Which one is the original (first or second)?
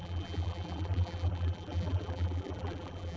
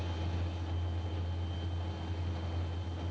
second